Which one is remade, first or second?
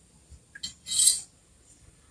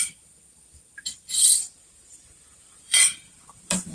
second